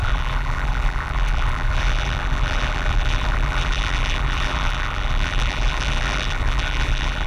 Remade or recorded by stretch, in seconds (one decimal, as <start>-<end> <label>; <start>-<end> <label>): 0.0-7.3 remade